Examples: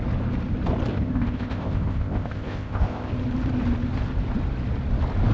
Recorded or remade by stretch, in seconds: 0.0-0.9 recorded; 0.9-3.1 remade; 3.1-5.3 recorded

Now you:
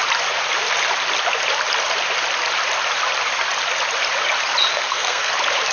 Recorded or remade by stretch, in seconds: 0.0-4.7 recorded; 4.7-5.3 remade; 5.3-5.7 recorded

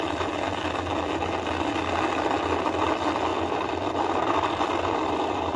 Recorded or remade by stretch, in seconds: 0.0-3.3 recorded; 3.3-5.6 remade

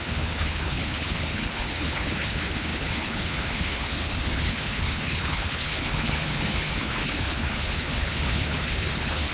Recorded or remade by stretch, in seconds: 0.0-9.3 remade

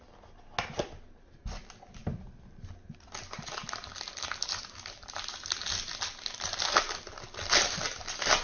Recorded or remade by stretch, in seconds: 0.0-8.4 recorded

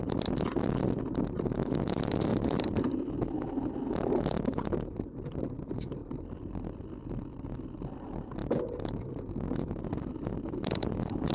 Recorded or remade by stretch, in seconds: 0.0-2.3 recorded; 2.3-2.9 remade; 2.9-6.0 recorded; 6.0-6.5 remade; 6.5-11.3 recorded